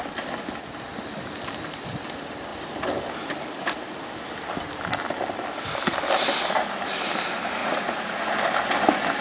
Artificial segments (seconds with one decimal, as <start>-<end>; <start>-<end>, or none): 7.6-8.3